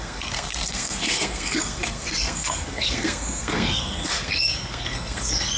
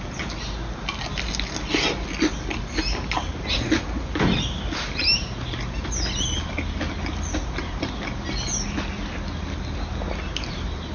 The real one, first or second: second